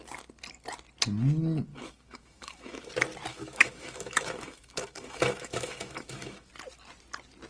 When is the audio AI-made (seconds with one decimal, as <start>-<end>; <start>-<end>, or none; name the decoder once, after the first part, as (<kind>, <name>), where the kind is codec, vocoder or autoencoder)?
1.7-2.9 (autoencoder, DAC-VAE); 3.3-6.5